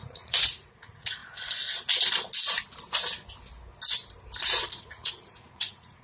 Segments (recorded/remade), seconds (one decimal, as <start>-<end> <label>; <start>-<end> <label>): 0.0-1.2 remade; 1.2-4.8 recorded; 4.8-6.0 remade